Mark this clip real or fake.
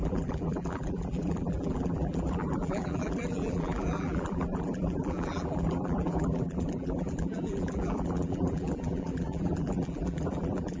fake